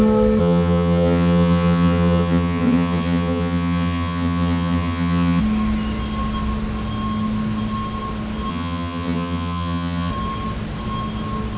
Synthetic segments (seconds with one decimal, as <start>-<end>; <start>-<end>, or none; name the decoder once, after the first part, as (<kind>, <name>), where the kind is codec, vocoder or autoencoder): 0.4-5.4 (vocoder, HiFi-GAN); 8.5-10.1